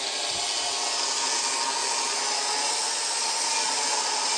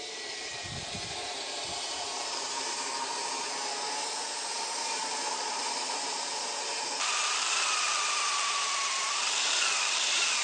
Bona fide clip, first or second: first